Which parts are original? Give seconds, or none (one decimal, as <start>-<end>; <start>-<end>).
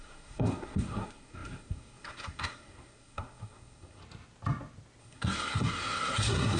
4.0-5.0